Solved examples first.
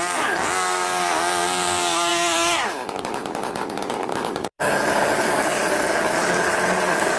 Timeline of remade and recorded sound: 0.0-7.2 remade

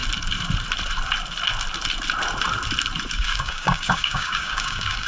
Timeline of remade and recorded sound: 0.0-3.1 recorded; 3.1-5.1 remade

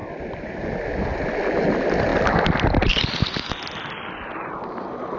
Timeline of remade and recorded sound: 0.0-5.2 recorded